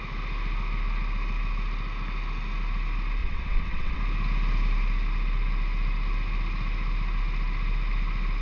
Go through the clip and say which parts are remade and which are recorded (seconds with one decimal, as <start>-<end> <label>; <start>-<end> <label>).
0.0-3.2 recorded; 3.2-4.0 remade; 4.0-8.4 recorded